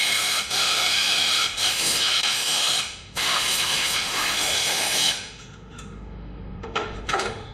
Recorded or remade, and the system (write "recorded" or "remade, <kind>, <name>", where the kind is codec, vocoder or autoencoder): remade, autoencoder, DAC-VAE